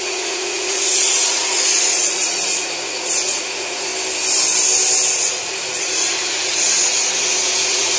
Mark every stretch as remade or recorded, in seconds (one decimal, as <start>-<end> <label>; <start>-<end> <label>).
0.0-3.9 remade; 3.9-5.1 recorded; 5.1-8.0 remade